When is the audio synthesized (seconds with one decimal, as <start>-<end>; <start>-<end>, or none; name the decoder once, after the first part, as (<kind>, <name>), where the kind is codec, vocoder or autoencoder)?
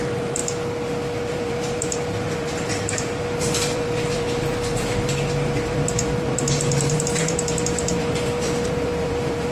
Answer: 0.0-0.4 (vocoder, BigVGAN v2); 1.3-9.5